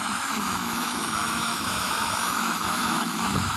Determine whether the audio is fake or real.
fake